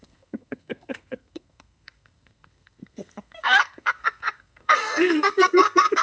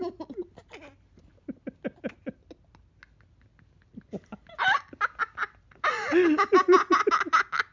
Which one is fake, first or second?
first